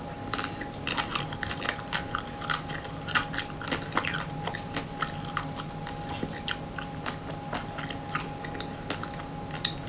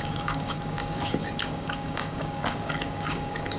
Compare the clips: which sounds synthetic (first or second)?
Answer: second